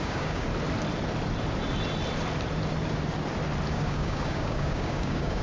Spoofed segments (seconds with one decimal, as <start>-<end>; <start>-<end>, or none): 0.0-0.5; 3.7-5.4